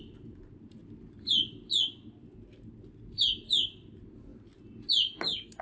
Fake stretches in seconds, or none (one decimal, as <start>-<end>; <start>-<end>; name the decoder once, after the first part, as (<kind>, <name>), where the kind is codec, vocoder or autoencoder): 0.0-0.8 (vocoder, BigVGAN v2); 3.1-4.3